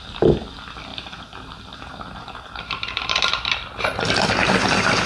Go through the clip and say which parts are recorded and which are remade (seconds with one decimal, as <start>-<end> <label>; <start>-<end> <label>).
0.0-0.9 recorded; 0.9-3.3 remade; 3.3-5.1 recorded